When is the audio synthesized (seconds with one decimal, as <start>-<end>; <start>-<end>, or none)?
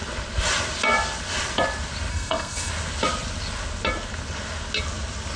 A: 2.1-2.7